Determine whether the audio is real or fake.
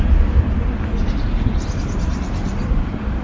fake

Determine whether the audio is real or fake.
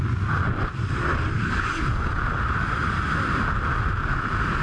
real